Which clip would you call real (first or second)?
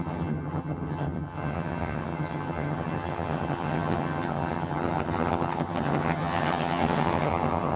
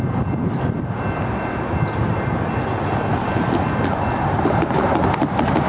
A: second